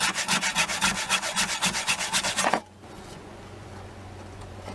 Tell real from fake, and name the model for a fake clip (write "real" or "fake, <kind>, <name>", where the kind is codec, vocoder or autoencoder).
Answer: fake, vocoder, Vocos